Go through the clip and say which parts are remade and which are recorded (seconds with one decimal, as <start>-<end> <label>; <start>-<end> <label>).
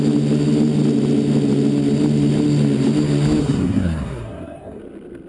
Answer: 0.0-3.4 recorded; 3.4-4.8 remade; 4.8-5.3 recorded